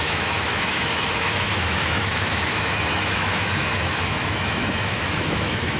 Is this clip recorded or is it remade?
remade